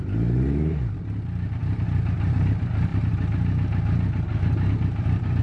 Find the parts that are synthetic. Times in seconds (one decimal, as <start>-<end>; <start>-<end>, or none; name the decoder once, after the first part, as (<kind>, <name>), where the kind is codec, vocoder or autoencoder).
none